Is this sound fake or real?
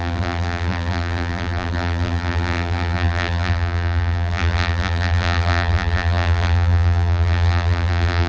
fake